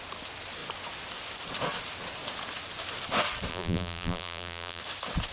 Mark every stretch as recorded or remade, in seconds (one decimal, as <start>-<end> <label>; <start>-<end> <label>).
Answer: 0.0-3.5 recorded; 3.5-4.8 remade; 4.8-5.3 recorded